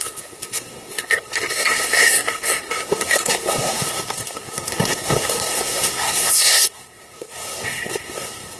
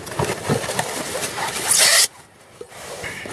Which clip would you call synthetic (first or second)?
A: first